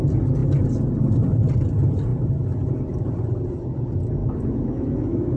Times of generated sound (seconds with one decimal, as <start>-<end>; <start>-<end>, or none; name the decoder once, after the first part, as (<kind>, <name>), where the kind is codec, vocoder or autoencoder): 4.2-5.4 (autoencoder, DAC-VAE)